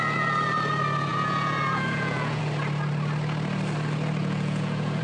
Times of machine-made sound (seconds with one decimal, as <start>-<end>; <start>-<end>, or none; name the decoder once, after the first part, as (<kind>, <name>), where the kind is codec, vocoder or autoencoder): 1.1-2.4 (vocoder, Vocos); 4.2-5.0